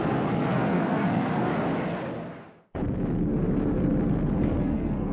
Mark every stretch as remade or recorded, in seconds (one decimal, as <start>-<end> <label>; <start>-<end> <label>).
0.0-1.5 remade; 1.5-4.6 recorded; 4.6-5.1 remade